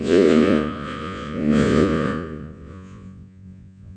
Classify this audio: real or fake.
fake